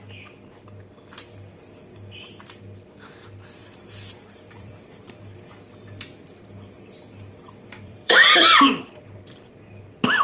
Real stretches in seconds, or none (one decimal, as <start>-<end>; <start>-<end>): 0.0-3.6; 8.6-10.2